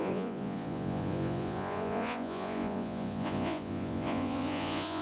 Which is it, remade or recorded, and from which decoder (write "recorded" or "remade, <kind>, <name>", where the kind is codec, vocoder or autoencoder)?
remade, vocoder, Vocos